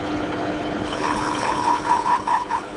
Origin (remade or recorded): remade